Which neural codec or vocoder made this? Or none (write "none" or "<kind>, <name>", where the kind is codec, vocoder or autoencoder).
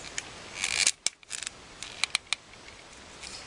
none